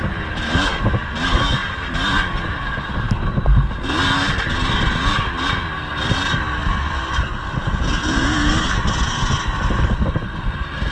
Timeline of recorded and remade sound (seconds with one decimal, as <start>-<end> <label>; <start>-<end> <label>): 0.0-7.6 recorded; 7.6-8.5 remade; 8.5-10.9 recorded